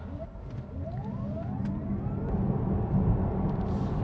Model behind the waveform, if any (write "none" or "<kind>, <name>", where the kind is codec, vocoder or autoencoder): none